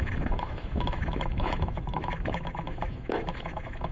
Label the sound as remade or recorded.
remade